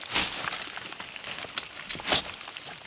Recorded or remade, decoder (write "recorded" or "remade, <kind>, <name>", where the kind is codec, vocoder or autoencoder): recorded